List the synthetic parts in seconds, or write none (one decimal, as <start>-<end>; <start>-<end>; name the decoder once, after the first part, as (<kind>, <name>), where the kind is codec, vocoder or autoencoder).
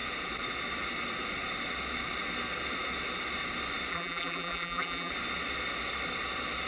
3.9-5.1 (vocoder, BigVGAN v2)